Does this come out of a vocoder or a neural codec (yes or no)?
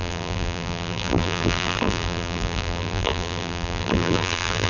yes